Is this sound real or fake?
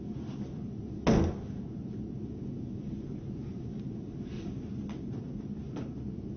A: real